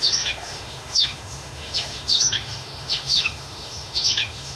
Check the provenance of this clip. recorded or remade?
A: remade